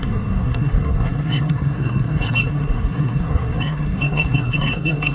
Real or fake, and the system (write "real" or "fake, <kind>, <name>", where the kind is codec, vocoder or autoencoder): fake, codec, SNAC